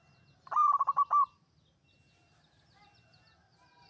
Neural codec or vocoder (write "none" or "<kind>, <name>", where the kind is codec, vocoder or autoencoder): none